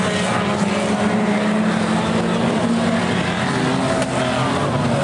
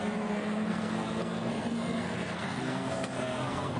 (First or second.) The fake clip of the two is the second